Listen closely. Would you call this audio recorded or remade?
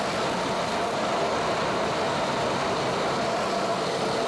recorded